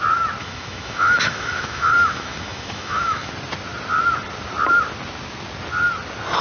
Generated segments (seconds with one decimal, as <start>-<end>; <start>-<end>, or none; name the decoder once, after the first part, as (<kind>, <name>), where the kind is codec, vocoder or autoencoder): 0.4-3.3 (autoencoder, DAC-VAE)

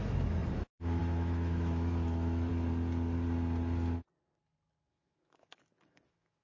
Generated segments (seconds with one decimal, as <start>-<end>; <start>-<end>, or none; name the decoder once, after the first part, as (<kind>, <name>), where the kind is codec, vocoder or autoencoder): 0.0-2.5 (autoencoder, DAC-VAE); 4.9-6.4